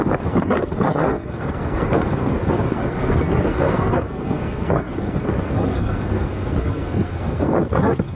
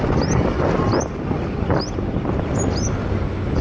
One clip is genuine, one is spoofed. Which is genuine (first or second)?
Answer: second